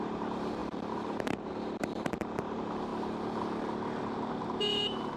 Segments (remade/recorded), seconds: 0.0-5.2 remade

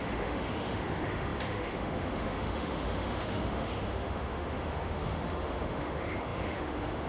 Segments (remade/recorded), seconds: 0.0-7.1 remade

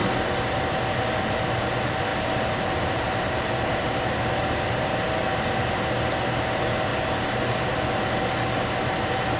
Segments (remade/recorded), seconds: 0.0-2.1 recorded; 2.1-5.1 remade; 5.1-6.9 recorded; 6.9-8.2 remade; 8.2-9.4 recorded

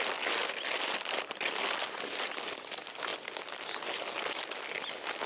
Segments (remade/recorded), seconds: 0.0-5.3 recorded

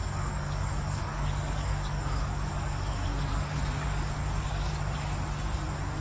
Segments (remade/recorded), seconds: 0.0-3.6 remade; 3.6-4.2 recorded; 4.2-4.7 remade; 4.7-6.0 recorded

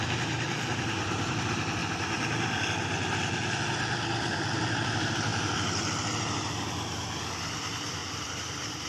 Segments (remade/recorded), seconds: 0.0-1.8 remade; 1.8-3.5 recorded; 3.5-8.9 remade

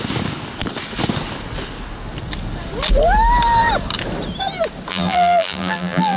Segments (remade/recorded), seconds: 0.0-4.9 recorded; 4.9-6.2 remade